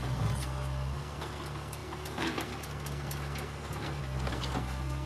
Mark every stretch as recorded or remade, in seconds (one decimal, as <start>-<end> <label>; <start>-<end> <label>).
0.0-5.1 remade